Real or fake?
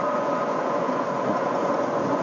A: fake